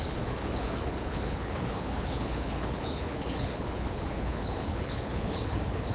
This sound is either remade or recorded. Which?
remade